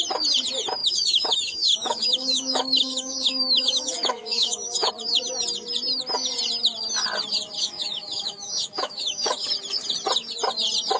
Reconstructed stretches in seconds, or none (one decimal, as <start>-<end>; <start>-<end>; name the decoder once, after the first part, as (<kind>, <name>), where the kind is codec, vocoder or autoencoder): 0.8-4.9 (autoencoder, DAC-VAE); 7.6-9.5